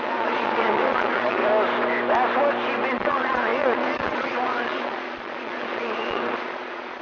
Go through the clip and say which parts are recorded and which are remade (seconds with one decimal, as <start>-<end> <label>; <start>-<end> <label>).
0.0-1.4 remade; 1.4-2.9 recorded; 2.9-7.0 remade